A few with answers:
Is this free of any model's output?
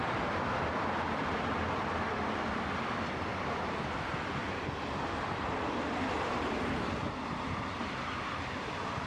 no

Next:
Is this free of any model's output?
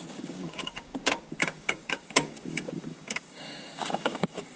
no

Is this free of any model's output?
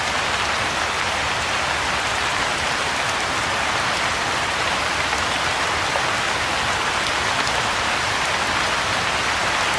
yes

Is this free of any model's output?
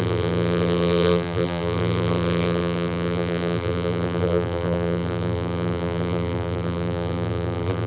no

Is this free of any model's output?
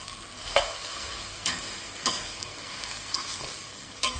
no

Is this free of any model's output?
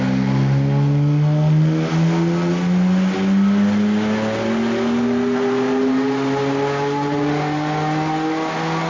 yes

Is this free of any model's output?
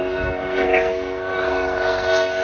no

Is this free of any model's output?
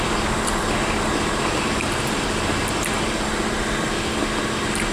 yes